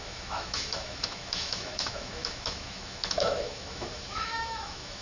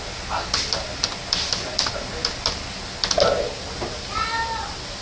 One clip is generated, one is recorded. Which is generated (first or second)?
first